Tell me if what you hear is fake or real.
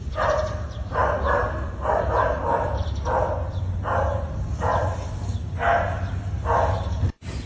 real